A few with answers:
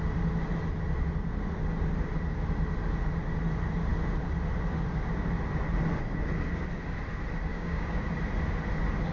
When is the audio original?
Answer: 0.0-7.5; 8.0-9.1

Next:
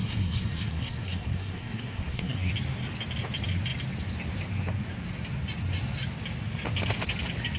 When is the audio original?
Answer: 2.5-7.6

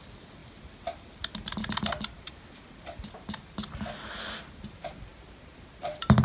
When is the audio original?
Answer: 0.0-6.2

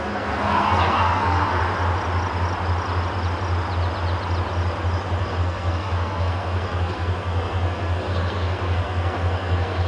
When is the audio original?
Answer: 1.6-5.2